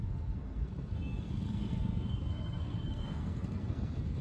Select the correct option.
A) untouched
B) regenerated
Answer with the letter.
B